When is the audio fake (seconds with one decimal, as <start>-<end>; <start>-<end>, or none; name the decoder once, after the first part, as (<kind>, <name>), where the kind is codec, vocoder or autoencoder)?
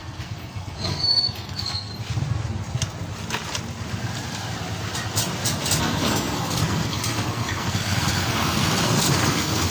0.0-1.9 (codec, SNAC); 5.8-9.7